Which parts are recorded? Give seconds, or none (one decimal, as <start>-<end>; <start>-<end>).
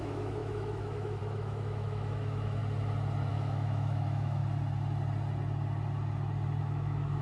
2.6-3.3; 4.4-6.6